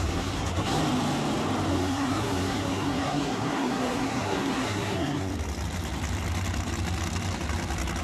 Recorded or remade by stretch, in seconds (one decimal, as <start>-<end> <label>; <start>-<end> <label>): 0.0-0.8 remade; 0.8-1.7 recorded; 1.7-5.3 remade; 5.3-8.0 recorded